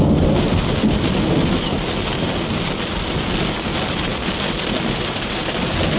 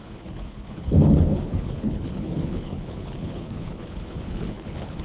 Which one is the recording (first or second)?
first